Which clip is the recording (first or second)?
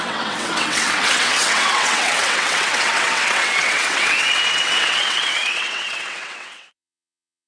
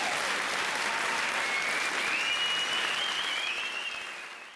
second